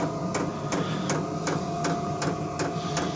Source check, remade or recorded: recorded